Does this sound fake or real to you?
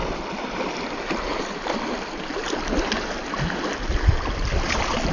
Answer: real